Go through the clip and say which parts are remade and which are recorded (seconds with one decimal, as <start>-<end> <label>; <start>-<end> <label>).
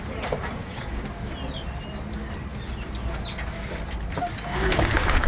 0.0-0.6 recorded; 0.6-1.3 remade; 1.3-4.5 recorded; 4.5-5.3 remade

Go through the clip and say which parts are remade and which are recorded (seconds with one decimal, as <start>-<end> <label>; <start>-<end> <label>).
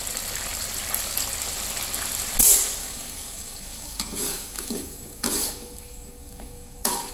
0.0-2.8 recorded; 2.8-7.1 remade